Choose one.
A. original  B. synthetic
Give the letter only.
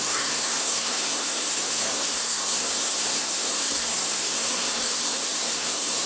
B